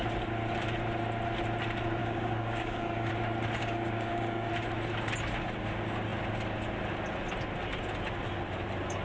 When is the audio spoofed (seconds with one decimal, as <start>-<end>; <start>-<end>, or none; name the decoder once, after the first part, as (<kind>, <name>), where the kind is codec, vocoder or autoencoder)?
2.0-3.1 (codec, DAC); 3.6-4.5